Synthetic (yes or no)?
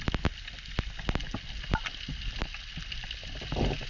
no